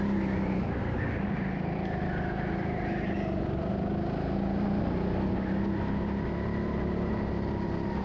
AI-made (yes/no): no